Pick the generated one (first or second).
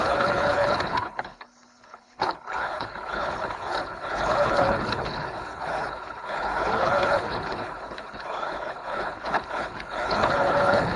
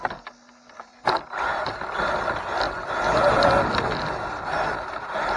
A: first